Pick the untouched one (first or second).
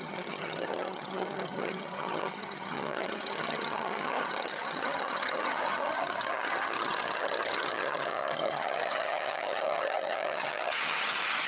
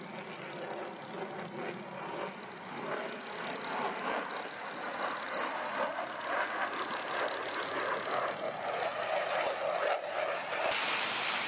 second